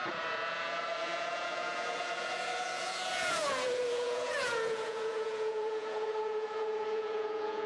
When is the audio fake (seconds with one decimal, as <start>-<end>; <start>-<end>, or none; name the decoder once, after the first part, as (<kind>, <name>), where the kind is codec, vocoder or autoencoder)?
0.0-7.7 (vocoder, Vocos)